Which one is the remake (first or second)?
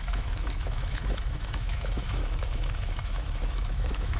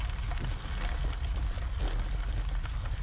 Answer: first